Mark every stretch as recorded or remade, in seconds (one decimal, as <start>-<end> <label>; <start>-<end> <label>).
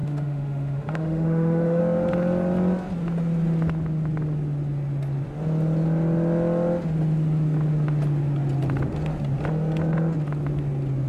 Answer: 0.0-1.8 remade; 1.8-11.1 recorded